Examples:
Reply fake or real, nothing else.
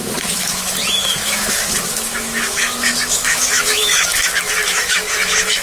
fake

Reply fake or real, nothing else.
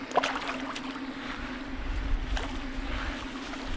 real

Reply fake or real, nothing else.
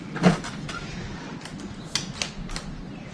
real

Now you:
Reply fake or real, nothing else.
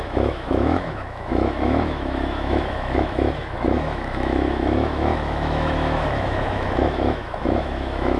fake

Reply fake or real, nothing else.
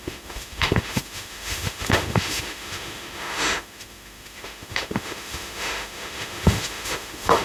fake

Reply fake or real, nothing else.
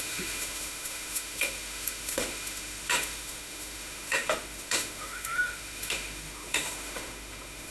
fake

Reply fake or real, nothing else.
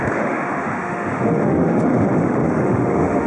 fake